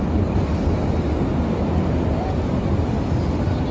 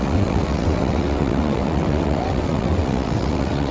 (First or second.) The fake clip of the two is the second